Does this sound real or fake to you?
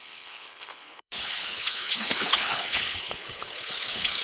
fake